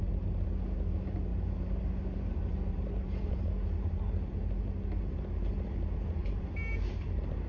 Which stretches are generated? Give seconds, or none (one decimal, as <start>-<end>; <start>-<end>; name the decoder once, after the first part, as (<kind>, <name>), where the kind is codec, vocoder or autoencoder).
1.3-3.4 (vocoder, BigVGAN v2); 6.2-7.0